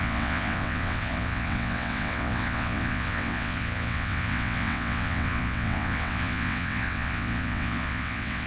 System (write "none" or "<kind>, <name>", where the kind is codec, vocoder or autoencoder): vocoder, WaveNeXt